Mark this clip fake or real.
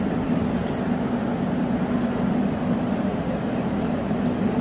real